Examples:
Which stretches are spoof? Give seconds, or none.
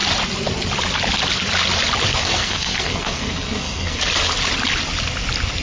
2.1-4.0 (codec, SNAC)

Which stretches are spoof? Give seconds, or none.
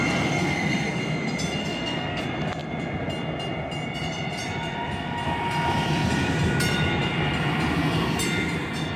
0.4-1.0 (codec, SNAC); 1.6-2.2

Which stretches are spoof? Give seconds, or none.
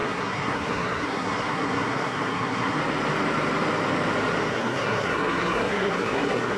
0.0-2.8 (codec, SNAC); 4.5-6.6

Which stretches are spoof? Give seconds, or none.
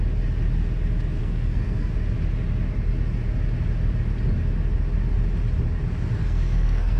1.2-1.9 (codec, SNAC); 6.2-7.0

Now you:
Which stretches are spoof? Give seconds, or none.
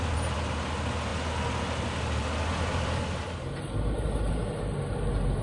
none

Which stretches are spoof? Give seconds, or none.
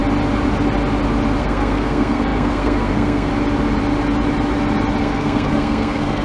1.4-3.3 (codec, SNAC); 5.0-6.2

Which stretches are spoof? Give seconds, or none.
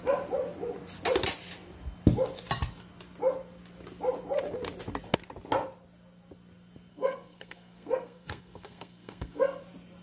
6.9-9.6 (codec, SNAC)